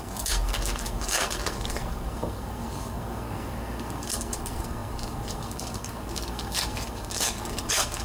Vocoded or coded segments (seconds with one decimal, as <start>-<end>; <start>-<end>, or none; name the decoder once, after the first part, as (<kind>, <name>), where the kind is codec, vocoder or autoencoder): 0.0-8.0 (codec, SNAC)